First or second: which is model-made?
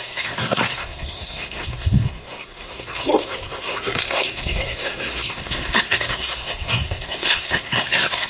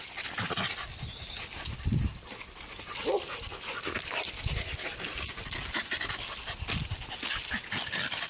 first